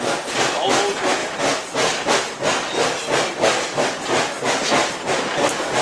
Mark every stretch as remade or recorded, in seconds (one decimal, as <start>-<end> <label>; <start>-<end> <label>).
0.0-5.8 recorded